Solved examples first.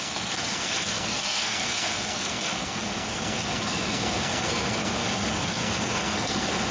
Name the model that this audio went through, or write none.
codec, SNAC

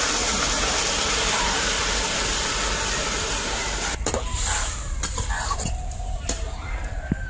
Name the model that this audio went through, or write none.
none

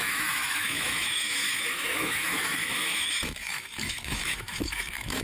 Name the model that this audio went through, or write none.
autoencoder, DAC-VAE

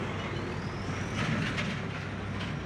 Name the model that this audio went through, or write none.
none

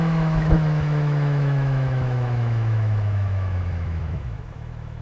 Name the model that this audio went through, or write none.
autoencoder, DAC-VAE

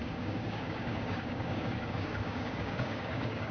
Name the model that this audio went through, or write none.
codec, DAC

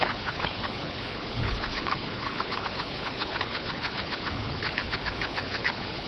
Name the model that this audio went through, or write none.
codec, HILCodec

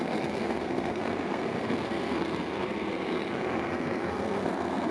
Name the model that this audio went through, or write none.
codec, SNAC